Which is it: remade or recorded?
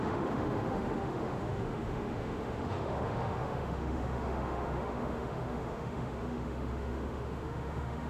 remade